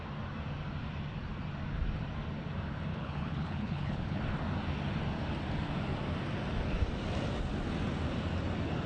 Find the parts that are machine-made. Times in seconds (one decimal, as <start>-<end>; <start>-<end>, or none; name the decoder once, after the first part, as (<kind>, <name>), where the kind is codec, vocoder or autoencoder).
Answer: 2.9-4.2 (codec, HILCodec)